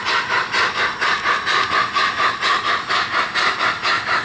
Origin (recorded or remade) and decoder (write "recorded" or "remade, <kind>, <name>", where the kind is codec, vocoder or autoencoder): recorded